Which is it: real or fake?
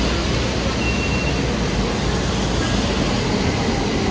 real